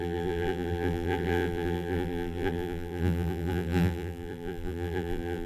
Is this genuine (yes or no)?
no